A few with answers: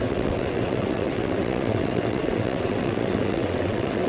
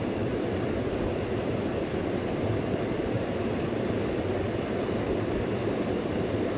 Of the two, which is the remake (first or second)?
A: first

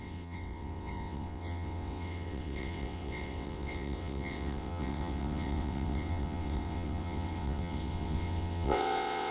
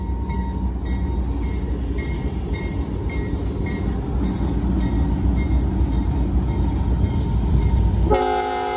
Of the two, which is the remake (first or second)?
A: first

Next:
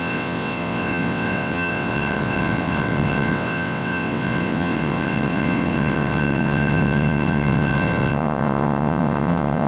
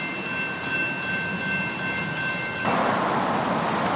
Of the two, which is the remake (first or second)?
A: first